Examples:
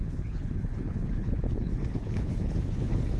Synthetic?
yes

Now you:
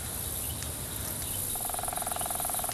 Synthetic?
no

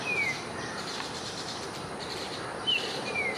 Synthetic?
yes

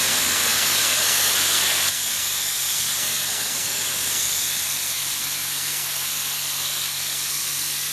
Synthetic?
yes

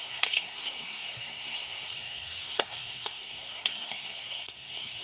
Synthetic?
yes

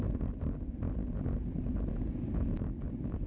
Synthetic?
no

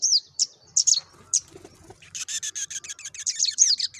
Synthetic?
no